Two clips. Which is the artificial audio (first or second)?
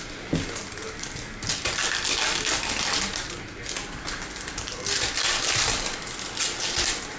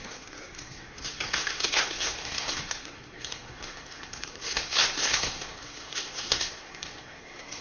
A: second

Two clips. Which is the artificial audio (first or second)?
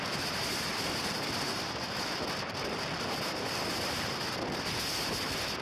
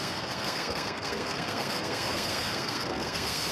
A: second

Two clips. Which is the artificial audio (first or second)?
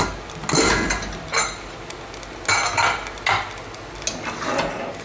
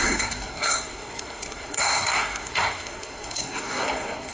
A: second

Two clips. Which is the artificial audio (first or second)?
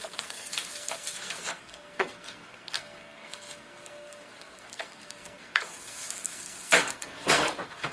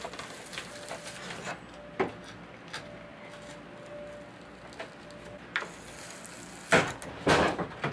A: first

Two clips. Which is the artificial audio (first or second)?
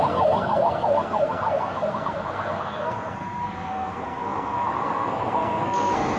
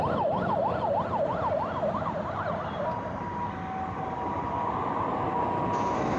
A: first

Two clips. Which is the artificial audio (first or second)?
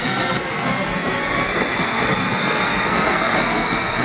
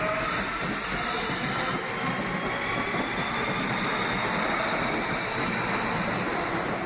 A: first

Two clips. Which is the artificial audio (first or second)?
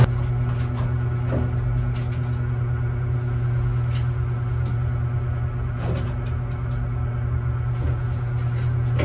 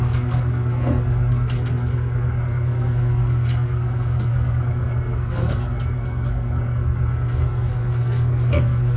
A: second